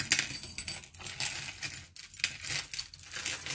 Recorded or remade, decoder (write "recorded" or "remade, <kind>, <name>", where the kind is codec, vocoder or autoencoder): recorded